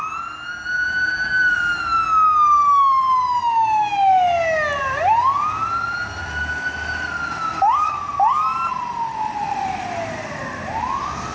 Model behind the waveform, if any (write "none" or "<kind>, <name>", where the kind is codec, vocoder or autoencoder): none